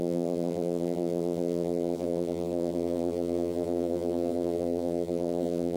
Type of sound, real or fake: fake